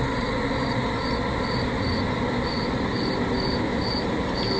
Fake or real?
real